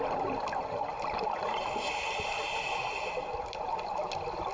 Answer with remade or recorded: recorded